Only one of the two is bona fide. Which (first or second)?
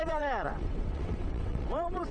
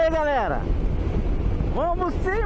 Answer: second